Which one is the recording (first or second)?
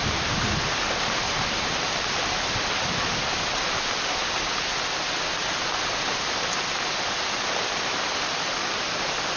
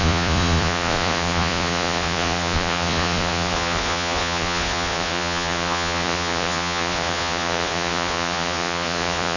first